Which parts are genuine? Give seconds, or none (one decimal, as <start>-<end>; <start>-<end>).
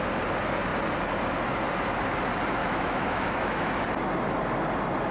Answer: 0.0-2.6; 3.7-5.1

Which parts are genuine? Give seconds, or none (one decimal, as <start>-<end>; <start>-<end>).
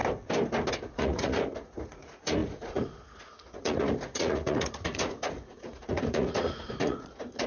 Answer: 0.0-0.7